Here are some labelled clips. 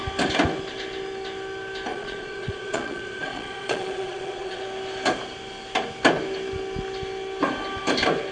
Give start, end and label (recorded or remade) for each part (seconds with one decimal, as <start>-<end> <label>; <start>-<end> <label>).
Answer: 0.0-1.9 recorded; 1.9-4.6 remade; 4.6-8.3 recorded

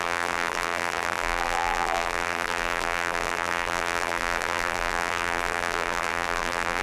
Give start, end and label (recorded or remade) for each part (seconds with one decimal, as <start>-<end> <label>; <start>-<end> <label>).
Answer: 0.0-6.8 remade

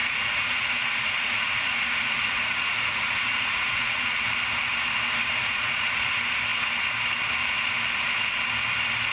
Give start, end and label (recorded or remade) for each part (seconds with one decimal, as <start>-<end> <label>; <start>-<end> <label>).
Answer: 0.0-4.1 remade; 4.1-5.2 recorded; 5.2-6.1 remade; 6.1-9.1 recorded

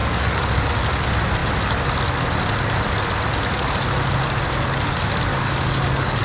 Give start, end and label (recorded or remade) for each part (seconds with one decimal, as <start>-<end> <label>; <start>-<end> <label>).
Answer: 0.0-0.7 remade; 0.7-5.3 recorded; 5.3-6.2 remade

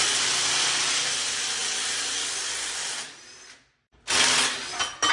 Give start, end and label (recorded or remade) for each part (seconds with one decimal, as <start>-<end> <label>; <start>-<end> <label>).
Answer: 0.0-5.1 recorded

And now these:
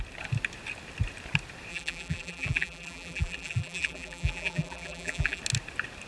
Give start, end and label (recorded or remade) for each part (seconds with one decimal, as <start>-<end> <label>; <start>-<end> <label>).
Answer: 0.0-1.7 recorded; 1.7-5.4 remade; 5.4-6.1 recorded

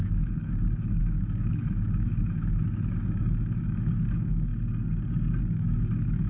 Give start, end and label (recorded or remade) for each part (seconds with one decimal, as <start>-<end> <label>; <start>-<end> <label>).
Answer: 0.0-4.5 remade; 4.5-5.4 recorded; 5.4-6.3 remade

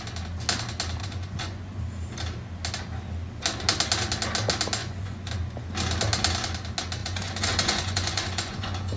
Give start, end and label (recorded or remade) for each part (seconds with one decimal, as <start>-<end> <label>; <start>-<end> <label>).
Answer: 0.0-1.0 recorded; 1.0-1.8 remade; 1.8-4.8 recorded; 4.8-5.3 remade; 5.3-7.0 recorded; 7.0-9.0 remade